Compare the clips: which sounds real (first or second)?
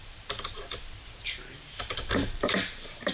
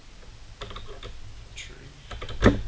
second